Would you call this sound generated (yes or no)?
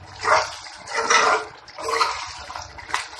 no